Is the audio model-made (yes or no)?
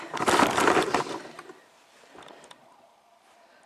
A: no